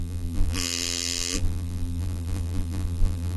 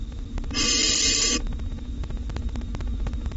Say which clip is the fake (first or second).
first